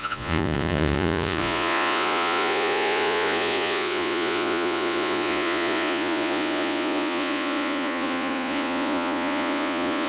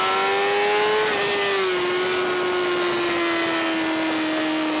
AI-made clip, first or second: first